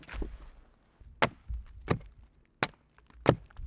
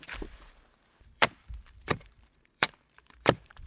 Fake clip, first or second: second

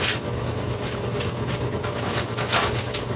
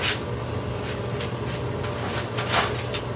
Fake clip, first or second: first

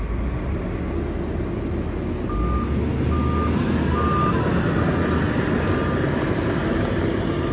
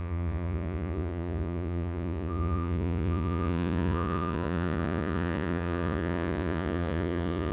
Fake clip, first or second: second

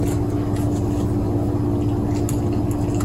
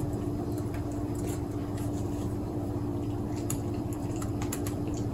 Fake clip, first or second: second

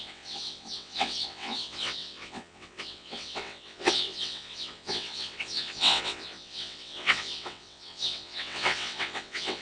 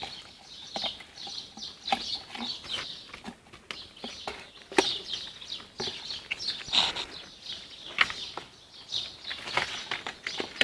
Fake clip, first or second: first